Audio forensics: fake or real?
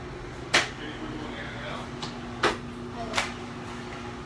real